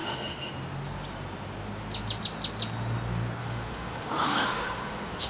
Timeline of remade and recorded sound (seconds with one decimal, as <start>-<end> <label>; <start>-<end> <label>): 0.0-0.5 remade; 0.5-3.4 recorded; 3.4-5.3 remade